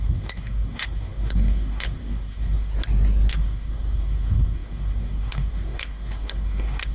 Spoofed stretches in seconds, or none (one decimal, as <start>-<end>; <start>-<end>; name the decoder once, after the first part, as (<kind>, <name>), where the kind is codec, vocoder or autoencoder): 0.0-2.7 (codec, SNAC); 3.3-6.9